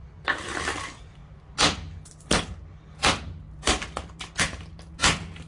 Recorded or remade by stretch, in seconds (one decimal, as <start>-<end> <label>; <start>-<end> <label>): 0.0-5.5 recorded